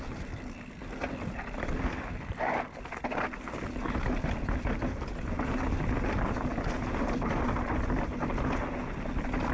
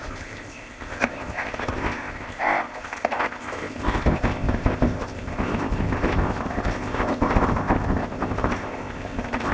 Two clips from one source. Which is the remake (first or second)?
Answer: second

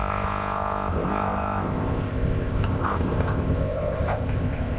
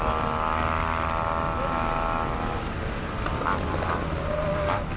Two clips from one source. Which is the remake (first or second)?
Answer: first